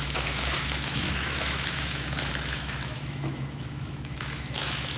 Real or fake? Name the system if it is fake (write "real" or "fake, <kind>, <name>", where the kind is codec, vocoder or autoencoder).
fake, autoencoder, DAC-VAE